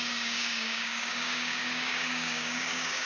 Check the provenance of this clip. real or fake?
fake